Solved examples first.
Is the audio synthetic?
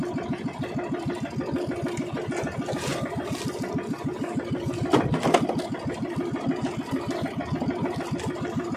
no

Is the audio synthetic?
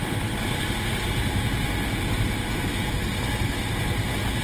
no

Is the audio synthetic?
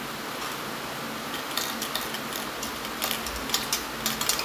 no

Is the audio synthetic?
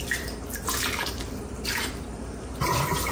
yes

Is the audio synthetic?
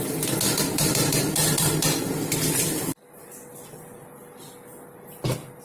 no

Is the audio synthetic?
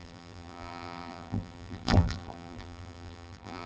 yes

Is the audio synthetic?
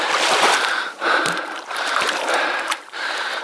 yes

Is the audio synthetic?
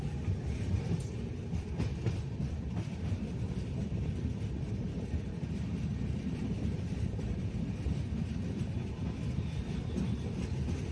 yes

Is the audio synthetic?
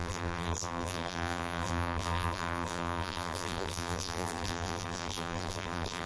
yes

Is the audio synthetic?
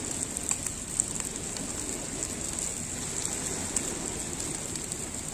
no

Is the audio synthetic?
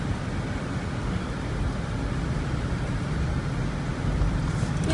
yes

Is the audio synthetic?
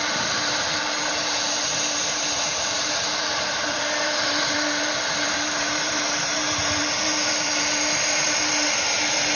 yes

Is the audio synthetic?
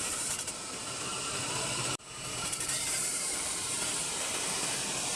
yes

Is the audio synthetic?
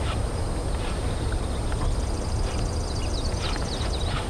no